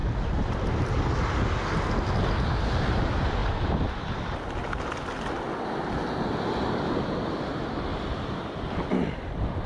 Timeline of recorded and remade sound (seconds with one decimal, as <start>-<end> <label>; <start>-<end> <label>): 0.0-7.9 recorded; 7.9-9.7 remade